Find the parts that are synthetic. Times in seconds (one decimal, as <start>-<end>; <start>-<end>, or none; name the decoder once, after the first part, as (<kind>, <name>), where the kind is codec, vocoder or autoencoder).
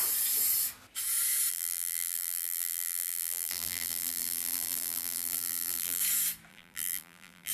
1.5-6.0 (vocoder, BigVGAN v2); 6.5-7.5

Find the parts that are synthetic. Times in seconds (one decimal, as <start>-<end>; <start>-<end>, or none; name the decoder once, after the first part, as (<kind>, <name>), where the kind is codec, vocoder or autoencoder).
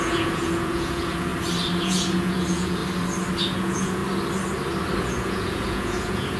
0.0-1.3 (vocoder, Vocos); 1.8-2.8; 3.4-4.0; 5.0-6.4